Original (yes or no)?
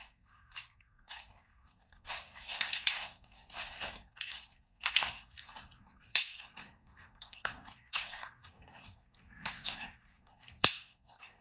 no